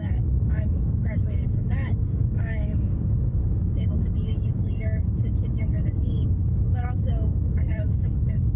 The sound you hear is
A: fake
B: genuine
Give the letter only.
A